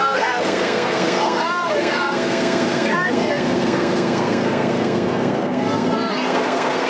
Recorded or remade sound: remade